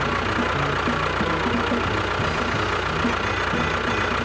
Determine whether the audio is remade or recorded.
recorded